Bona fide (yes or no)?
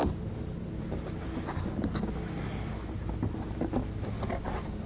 yes